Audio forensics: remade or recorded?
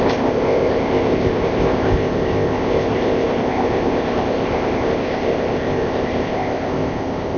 remade